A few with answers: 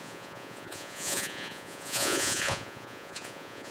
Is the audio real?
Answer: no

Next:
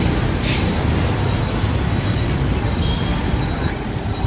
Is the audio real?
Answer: yes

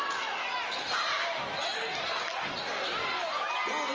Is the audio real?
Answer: yes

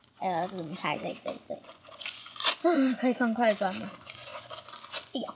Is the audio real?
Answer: no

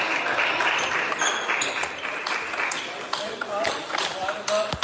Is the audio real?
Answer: yes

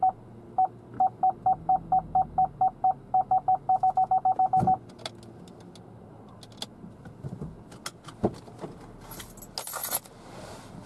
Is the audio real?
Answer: yes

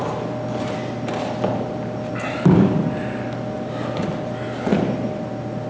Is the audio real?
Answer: yes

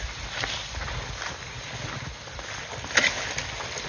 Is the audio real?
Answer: yes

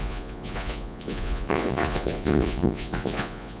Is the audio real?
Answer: no